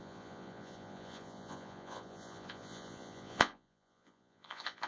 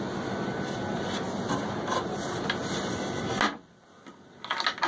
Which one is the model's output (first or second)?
first